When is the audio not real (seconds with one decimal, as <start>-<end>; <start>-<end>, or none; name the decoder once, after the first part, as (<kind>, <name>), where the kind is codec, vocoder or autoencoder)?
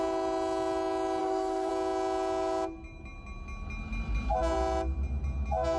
1.2-1.7 (codec, SNAC)